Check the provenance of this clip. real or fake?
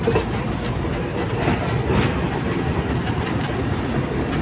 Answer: real